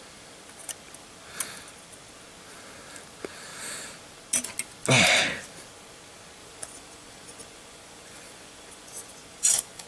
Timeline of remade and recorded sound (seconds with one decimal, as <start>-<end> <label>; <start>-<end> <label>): 0.0-6.4 recorded; 6.4-9.9 remade